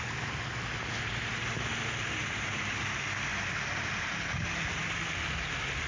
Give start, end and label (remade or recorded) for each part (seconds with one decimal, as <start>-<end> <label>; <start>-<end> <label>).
0.0-5.9 recorded